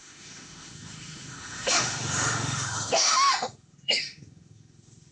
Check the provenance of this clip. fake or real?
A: fake